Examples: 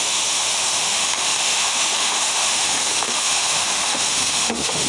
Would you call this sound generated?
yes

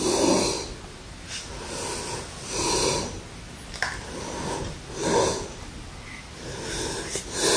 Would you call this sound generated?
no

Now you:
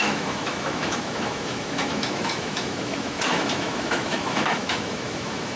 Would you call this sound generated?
yes